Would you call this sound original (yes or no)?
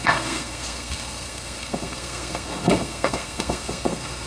no